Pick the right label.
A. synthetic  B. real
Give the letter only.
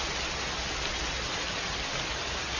B